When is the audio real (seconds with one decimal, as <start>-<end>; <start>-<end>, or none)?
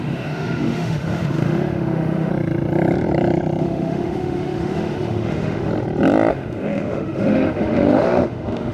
2.3-3.6; 5.7-6.3